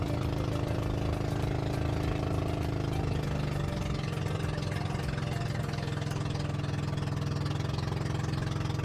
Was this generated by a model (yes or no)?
no